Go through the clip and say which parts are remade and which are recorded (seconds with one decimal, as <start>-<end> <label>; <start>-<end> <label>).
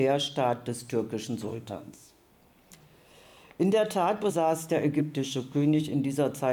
0.0-1.5 recorded; 1.5-2.3 remade; 2.3-5.0 recorded; 5.0-5.8 remade; 5.8-6.5 recorded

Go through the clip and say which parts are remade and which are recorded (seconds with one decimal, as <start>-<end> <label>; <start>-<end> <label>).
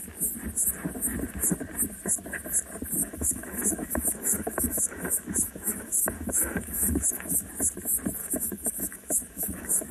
0.0-3.0 recorded; 3.0-7.5 remade; 7.5-8.2 recorded; 8.2-9.9 remade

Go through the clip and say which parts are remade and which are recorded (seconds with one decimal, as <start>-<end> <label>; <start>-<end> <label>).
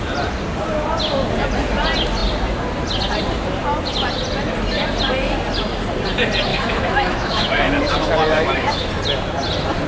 0.0-6.5 recorded; 6.5-8.9 remade; 8.9-9.9 recorded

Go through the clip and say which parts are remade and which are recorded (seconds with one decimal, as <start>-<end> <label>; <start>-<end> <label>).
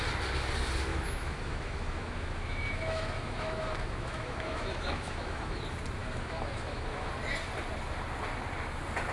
0.0-0.9 recorded; 0.9-5.6 remade; 5.6-6.0 recorded; 6.0-7.1 remade; 7.1-9.1 recorded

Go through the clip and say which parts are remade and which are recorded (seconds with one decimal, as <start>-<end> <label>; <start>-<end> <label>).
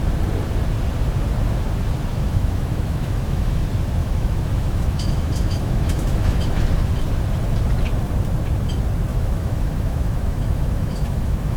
0.0-2.1 recorded; 2.1-3.6 remade; 3.6-4.0 recorded; 4.0-6.6 remade; 6.6-9.1 recorded; 9.1-11.6 remade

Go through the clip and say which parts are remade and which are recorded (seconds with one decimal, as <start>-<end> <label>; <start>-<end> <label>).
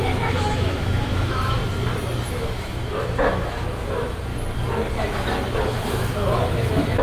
0.0-1.6 remade; 1.6-2.3 recorded; 2.3-4.3 remade; 4.3-5.6 recorded; 5.6-7.0 remade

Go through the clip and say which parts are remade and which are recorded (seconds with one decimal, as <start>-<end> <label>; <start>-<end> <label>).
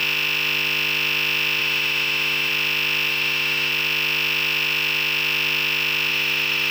0.0-1.6 recorded; 1.6-2.5 remade; 2.5-3.1 recorded; 3.1-3.7 remade; 3.7-6.1 recorded; 6.1-6.7 remade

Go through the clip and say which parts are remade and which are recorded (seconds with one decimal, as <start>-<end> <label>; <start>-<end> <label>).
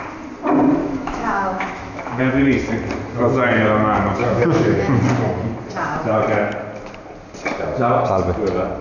0.0-0.8 recorded; 0.8-2.2 remade; 2.2-4.2 recorded; 4.2-4.8 remade; 4.8-8.8 recorded